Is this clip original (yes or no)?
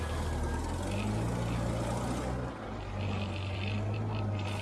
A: yes